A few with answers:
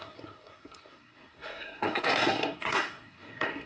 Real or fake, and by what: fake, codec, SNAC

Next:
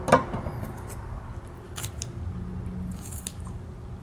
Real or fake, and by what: real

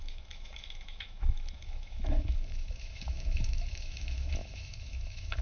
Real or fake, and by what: fake, autoencoder, DAC-VAE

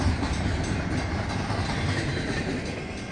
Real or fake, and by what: real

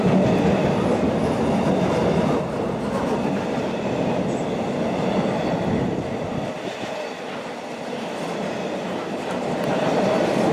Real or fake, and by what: real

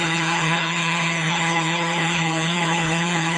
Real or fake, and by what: fake, codec, HILCodec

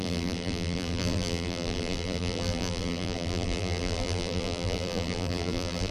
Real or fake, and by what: fake, vocoder, BigVGAN v2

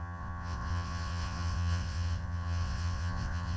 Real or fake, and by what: fake, vocoder, WaveNeXt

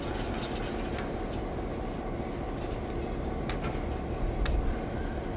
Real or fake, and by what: real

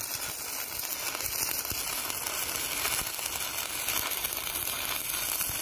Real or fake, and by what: real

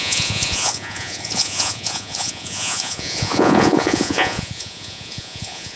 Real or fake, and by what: fake, vocoder, Vocos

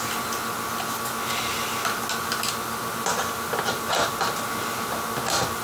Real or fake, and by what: real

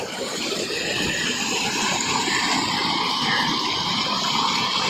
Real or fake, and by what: fake, vocoder, BigVGAN v2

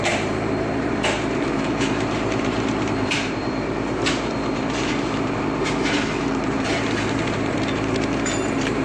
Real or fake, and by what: fake, vocoder, BigVGAN v2